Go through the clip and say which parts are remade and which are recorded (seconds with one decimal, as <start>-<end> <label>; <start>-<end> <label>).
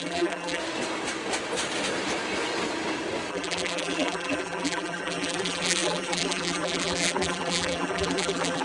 0.0-0.6 remade; 0.6-3.3 recorded; 3.3-8.6 remade